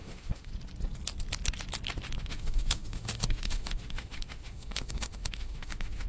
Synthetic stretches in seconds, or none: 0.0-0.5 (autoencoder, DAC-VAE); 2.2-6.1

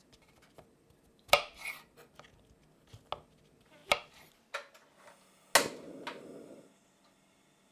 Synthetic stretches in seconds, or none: none

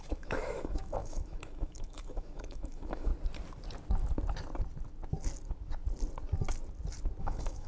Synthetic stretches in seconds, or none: 0.0-3.1 (autoencoder, DAC-VAE); 7.2-7.7

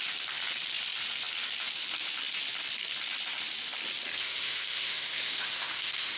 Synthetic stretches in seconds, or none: 4.1-6.2 (autoencoder, DAC-VAE)